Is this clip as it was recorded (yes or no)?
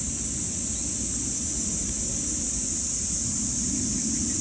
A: yes